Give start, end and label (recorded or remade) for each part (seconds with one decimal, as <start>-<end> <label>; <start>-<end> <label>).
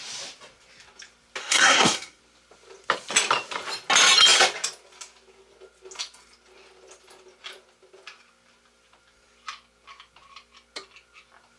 0.0-1.4 recorded; 1.4-2.2 remade; 2.2-11.6 recorded